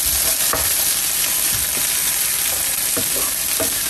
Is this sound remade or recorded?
recorded